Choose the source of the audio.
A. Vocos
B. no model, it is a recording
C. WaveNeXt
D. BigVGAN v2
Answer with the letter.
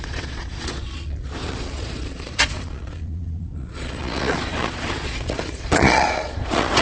A